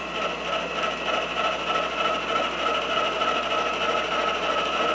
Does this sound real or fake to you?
real